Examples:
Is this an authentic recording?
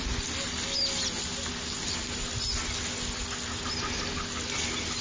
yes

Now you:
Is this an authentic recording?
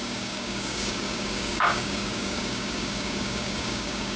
no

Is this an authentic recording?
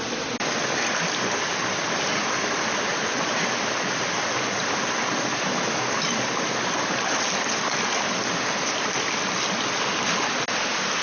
yes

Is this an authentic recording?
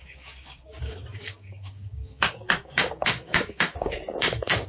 no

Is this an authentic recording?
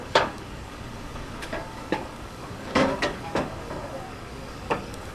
no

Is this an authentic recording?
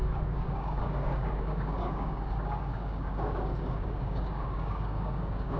no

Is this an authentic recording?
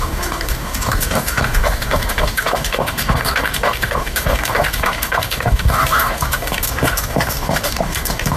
no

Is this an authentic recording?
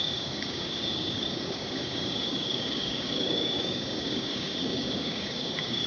no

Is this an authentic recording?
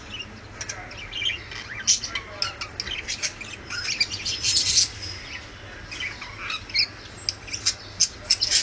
yes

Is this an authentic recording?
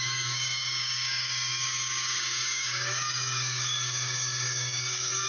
no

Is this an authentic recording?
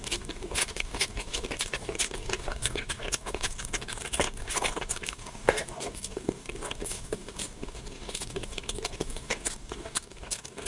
no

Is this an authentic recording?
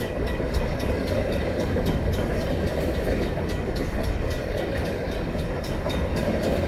no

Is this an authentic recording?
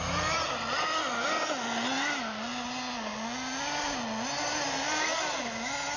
yes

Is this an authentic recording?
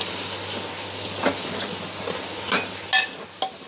yes